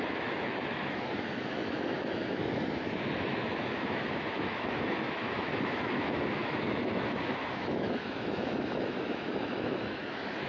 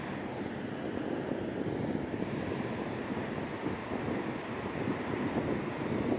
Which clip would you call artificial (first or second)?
first